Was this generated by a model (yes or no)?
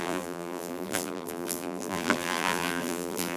yes